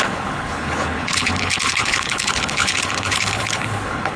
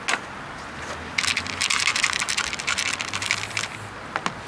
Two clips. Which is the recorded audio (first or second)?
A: second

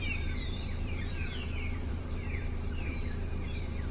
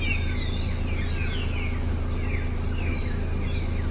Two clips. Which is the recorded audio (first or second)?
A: second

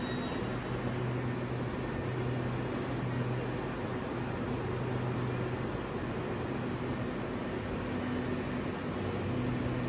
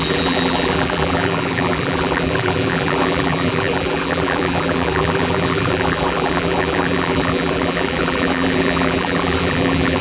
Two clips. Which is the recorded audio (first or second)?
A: first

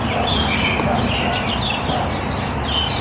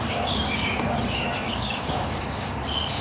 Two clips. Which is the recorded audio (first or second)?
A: first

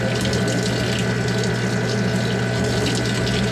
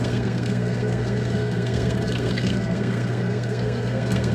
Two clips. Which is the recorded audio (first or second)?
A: first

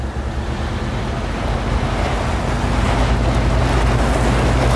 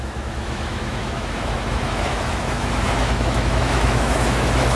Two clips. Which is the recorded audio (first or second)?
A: first